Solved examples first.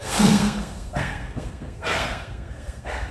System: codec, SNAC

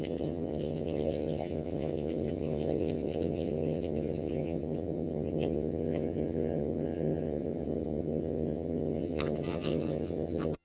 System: vocoder, HiFi-GAN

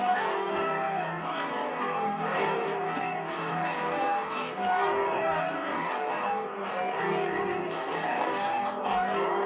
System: codec, DAC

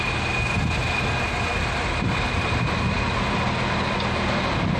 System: none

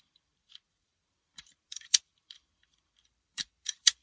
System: vocoder, BigVGAN v2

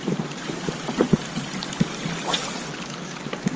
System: none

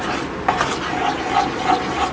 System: none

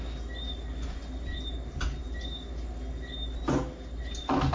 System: none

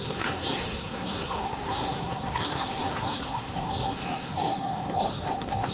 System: codec, SNAC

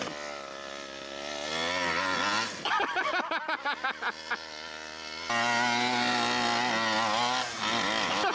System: none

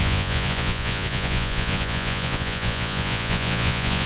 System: vocoder, Vocos